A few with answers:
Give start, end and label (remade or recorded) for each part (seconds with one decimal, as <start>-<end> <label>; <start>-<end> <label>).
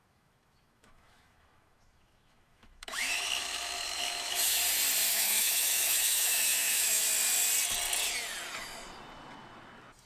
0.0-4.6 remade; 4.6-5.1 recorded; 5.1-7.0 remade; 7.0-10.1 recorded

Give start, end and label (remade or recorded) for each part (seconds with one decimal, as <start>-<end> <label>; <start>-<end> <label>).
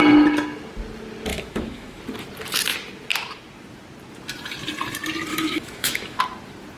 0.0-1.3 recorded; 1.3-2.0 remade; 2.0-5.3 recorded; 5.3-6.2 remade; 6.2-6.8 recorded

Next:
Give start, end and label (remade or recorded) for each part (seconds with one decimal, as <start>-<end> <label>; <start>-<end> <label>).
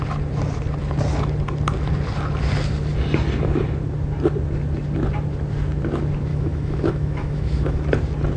0.0-6.3 recorded; 6.3-7.8 remade; 7.8-8.4 recorded